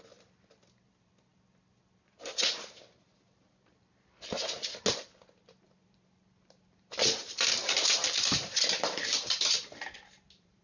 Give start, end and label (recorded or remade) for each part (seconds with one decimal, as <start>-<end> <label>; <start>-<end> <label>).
0.0-7.6 recorded; 7.6-10.6 remade